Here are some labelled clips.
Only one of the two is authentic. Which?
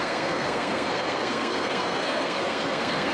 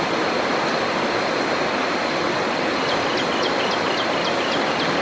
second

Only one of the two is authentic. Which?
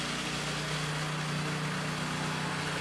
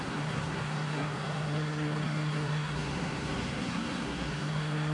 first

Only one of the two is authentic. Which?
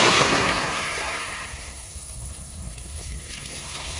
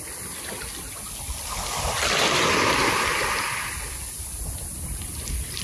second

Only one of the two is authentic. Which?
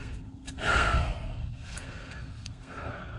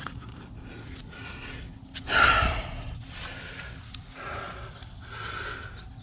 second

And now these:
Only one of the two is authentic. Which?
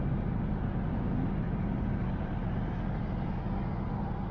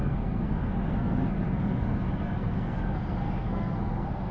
first